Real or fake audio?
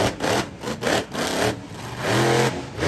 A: real